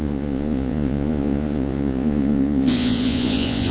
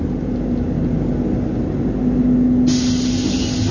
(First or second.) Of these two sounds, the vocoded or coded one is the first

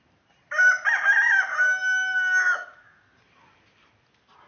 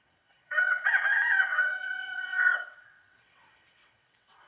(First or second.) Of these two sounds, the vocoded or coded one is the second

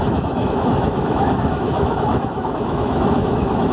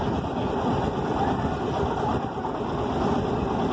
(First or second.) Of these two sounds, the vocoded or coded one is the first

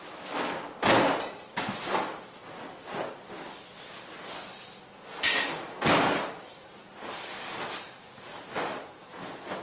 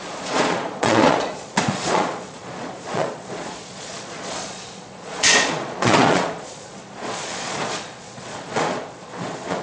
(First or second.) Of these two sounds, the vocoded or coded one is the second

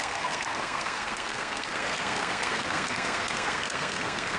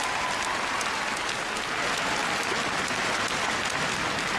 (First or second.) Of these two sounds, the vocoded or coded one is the first